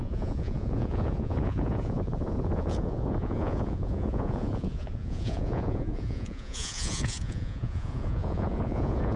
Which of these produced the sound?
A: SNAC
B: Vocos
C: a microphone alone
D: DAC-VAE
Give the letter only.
B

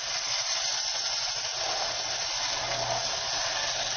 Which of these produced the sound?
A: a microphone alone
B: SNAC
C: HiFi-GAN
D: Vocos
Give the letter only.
A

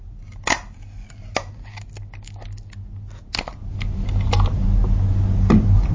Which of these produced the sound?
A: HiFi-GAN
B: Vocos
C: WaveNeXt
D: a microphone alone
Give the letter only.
D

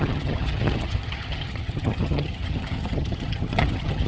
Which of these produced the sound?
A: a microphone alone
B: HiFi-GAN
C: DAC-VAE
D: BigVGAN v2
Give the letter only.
B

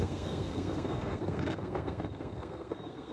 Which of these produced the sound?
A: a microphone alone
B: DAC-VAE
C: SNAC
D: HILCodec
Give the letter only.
C